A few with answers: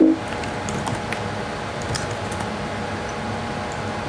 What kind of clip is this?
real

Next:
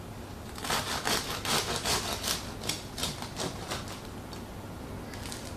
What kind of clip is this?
real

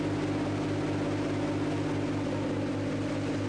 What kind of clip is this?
real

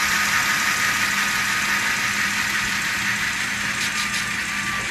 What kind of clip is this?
real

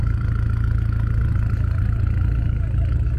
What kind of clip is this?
real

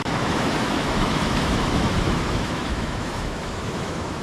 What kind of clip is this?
fake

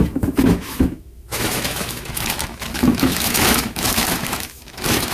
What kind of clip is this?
fake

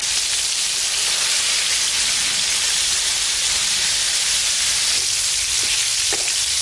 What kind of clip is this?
real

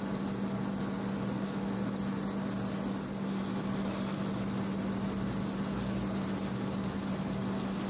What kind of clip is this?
real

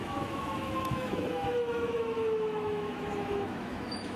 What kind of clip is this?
fake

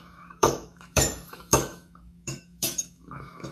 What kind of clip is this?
fake